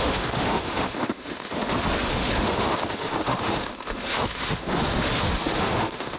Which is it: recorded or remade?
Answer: remade